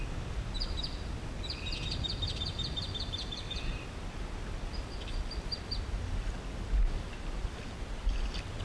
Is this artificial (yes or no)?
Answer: no